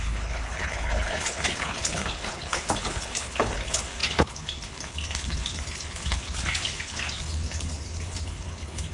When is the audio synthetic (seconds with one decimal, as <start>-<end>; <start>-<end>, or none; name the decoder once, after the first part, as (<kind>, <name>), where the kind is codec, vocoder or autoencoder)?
0.0-8.9 (codec, HILCodec)